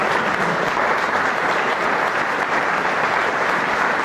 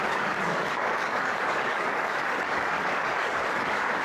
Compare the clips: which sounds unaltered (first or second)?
first